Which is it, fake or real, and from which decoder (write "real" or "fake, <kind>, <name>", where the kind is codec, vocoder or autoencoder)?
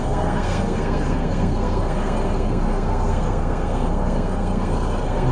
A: fake, codec, SNAC